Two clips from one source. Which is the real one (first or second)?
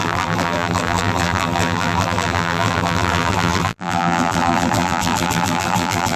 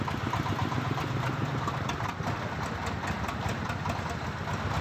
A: second